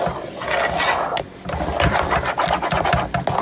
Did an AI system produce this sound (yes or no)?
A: no